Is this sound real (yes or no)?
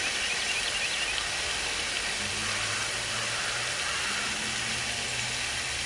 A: yes